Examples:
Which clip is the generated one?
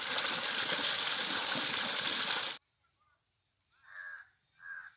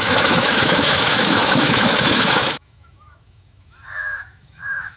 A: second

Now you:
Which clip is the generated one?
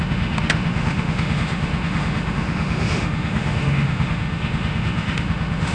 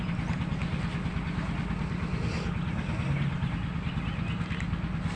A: first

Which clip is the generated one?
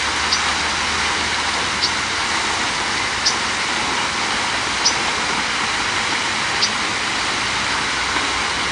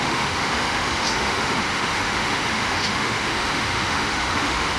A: second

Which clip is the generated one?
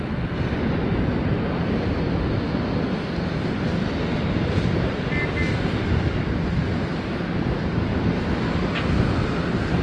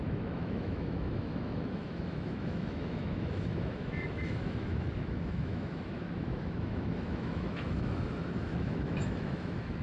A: second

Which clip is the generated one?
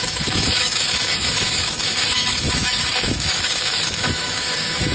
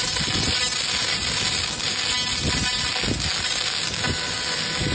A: first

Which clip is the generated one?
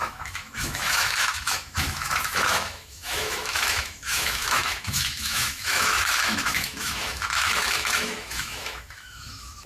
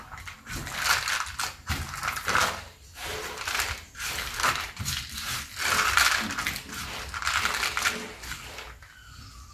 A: first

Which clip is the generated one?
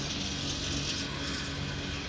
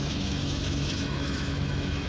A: second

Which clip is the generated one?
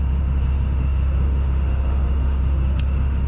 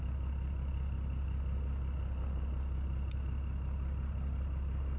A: first